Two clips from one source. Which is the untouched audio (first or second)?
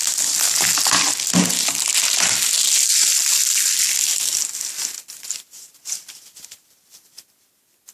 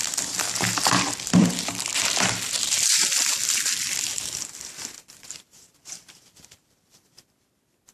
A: first